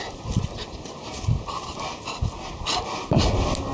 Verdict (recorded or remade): recorded